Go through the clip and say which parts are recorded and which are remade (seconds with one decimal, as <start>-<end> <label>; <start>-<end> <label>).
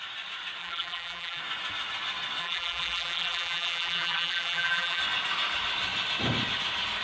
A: 0.0-0.6 recorded; 0.6-1.4 remade; 1.4-2.4 recorded; 2.4-5.0 remade; 5.0-7.0 recorded